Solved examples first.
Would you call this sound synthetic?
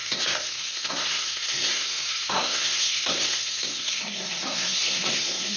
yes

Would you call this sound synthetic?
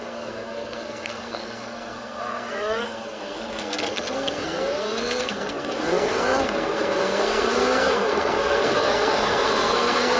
yes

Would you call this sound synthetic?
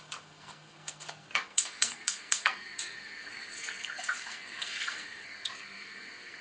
yes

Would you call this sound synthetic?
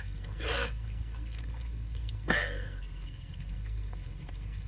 yes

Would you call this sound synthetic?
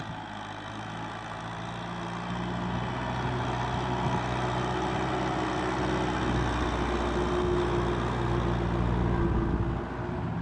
no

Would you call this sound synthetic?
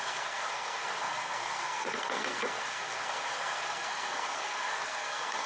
yes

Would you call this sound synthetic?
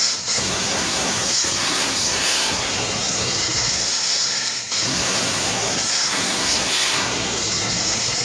yes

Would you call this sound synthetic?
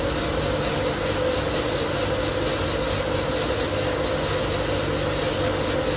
no